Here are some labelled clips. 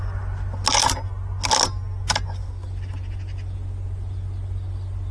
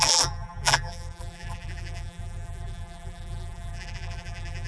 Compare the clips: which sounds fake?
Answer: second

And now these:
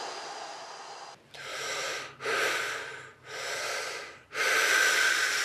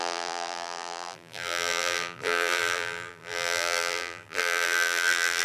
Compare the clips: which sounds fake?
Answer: second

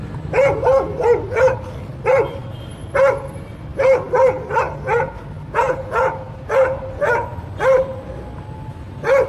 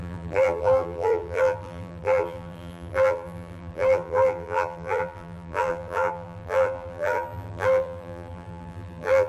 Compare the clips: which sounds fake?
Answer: second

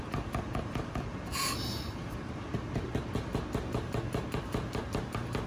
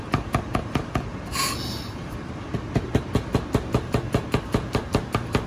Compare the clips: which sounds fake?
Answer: second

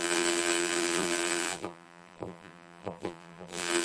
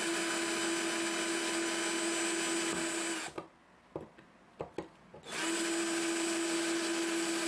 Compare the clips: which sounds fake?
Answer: first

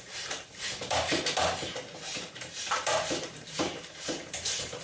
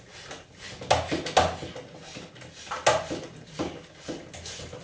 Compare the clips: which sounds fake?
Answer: first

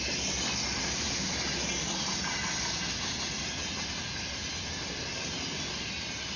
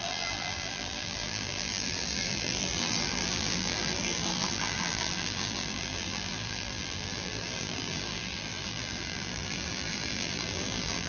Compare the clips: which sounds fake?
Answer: second